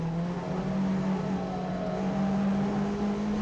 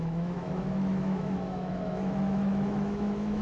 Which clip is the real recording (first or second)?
first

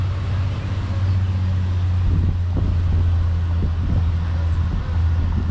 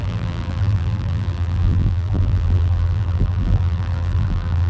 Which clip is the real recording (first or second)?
first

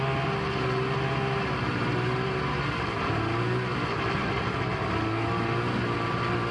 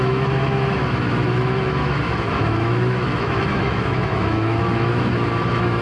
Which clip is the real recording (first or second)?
first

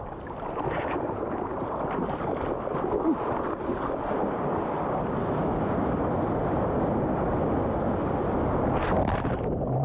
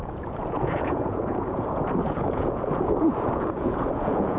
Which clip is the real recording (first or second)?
first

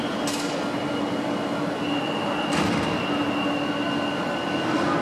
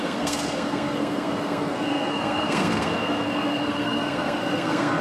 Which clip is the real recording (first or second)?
first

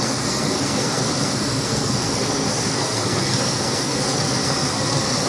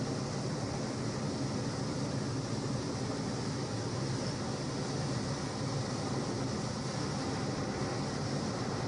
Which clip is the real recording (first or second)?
second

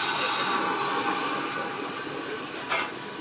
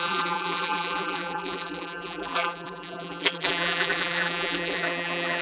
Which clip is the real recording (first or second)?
first